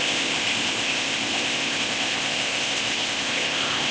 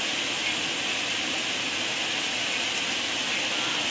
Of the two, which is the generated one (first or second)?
first